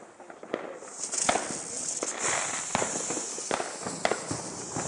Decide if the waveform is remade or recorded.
recorded